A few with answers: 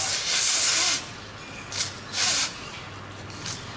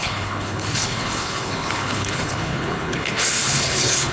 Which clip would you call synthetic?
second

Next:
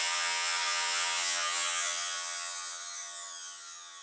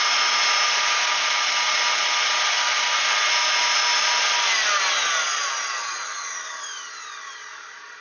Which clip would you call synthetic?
first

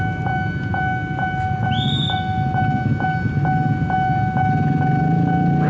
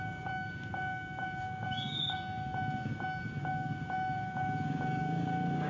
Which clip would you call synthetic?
second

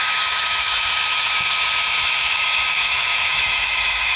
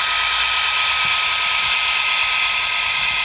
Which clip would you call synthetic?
first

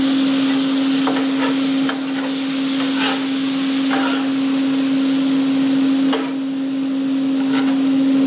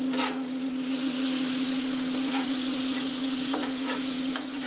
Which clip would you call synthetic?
second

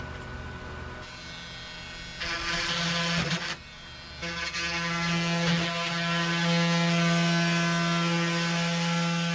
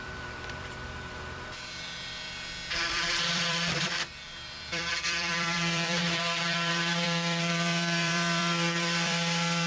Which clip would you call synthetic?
second